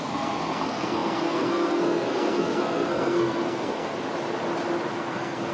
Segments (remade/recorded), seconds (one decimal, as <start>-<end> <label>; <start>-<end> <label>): 0.0-3.9 remade; 3.9-4.9 recorded; 4.9-5.5 remade